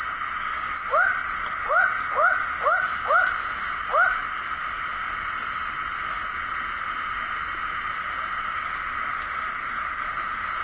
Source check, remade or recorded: recorded